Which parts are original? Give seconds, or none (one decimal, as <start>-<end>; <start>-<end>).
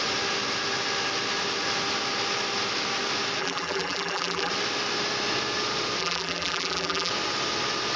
0.0-3.4; 4.5-6.0; 7.1-8.0